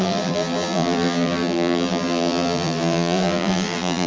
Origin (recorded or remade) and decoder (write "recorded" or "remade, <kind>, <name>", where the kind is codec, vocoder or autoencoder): remade, vocoder, BigVGAN v2